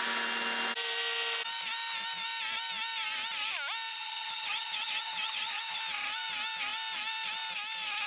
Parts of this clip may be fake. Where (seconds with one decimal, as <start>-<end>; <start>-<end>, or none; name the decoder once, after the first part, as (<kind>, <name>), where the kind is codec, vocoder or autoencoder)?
3.9-5.8 (vocoder, HiFi-GAN)